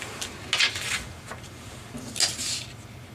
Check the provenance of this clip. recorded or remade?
recorded